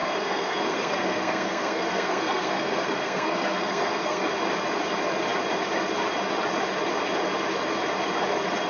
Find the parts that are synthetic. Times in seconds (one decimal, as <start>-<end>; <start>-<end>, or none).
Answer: 0.0-4.3